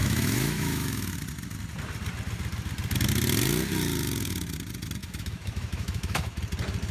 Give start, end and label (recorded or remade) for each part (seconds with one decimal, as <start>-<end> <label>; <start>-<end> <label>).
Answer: 0.0-1.2 remade; 1.2-5.0 recorded; 5.0-6.4 remade; 6.4-6.9 recorded